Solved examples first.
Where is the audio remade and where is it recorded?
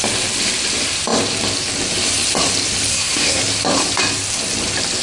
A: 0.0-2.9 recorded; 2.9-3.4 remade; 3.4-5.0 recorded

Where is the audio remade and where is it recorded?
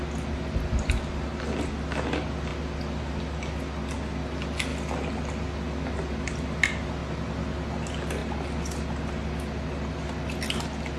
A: 0.0-11.0 recorded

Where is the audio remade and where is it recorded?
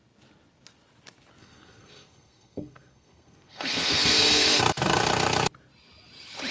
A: 0.0-1.4 recorded; 1.4-4.6 remade; 4.6-6.5 recorded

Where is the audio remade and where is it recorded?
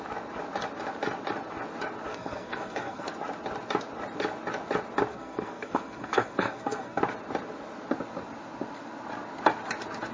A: 0.0-2.1 recorded; 2.1-3.1 remade; 3.1-5.1 recorded; 5.1-7.0 remade; 7.0-10.1 recorded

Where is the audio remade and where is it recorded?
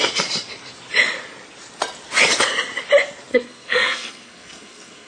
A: 0.0-3.3 recorded; 3.3-5.1 remade